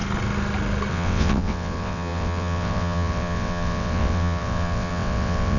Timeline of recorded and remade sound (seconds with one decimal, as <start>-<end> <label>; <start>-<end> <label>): 0.0-0.9 recorded; 0.9-5.6 remade